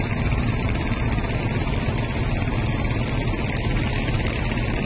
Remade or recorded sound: recorded